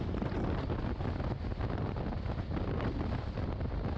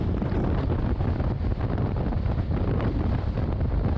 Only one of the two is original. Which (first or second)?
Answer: first